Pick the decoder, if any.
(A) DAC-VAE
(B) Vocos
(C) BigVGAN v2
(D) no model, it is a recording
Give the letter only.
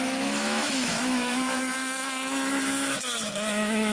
A